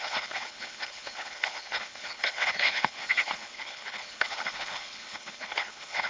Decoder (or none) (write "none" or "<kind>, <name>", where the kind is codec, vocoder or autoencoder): codec, HILCodec